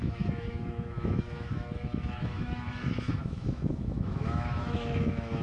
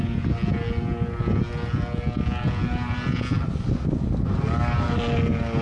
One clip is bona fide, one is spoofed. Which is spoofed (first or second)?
first